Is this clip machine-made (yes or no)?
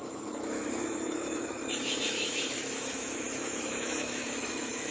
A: yes